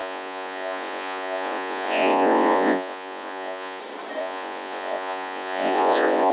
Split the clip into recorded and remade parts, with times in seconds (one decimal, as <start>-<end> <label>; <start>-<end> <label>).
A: 0.0-3.8 remade; 3.8-4.2 recorded; 4.2-6.3 remade